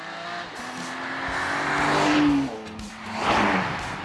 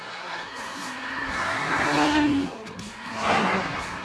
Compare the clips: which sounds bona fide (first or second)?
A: first